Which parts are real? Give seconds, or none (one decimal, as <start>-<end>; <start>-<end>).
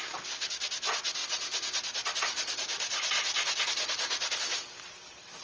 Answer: 0.0-5.4